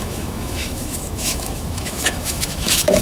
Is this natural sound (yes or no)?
no